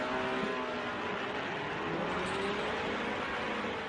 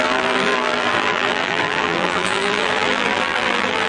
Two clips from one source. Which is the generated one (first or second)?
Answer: second